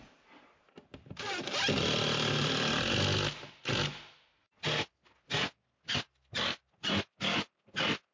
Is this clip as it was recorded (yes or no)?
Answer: yes